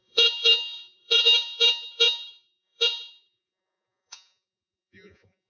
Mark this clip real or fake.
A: fake